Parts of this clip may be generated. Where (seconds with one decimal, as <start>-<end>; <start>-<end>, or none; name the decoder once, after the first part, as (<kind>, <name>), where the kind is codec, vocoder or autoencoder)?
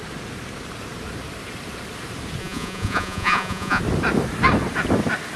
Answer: 2.4-3.8 (vocoder, Vocos)